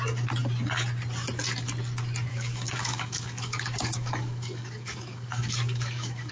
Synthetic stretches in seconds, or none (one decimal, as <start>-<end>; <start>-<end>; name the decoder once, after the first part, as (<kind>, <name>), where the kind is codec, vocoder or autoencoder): 2.3-6.3 (codec, DAC)